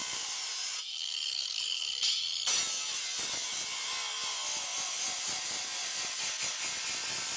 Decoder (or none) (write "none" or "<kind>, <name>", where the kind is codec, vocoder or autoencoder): none